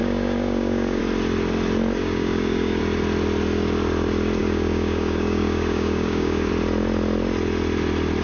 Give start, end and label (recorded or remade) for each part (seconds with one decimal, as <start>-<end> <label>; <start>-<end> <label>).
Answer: 0.0-1.0 remade; 1.0-2.0 recorded; 2.0-2.8 remade; 2.8-4.4 recorded; 4.4-6.5 remade; 6.5-8.2 recorded